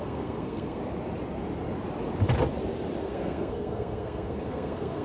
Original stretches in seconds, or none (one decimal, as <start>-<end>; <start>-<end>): 0.8-3.0